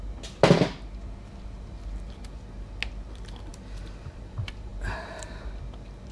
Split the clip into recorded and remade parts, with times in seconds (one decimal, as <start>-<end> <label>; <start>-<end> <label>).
0.0-4.7 recorded; 4.7-5.6 remade; 5.6-6.1 recorded